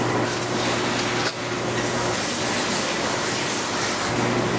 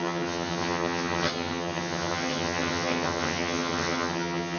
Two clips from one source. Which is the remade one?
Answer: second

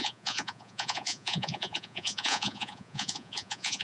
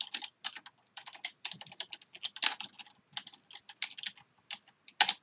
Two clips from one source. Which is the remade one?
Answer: first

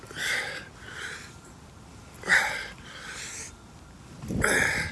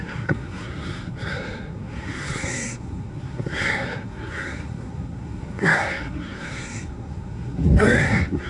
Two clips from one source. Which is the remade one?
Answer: second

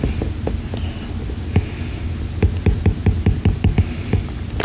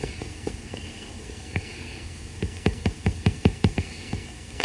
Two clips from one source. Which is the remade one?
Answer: second